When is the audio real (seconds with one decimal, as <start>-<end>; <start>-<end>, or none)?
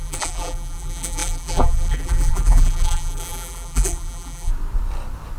4.5-5.4